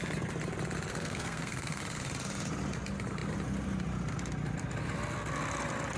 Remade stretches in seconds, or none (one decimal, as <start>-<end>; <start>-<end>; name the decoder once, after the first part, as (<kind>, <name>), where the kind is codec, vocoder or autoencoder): 0.9-1.8 (codec, SNAC)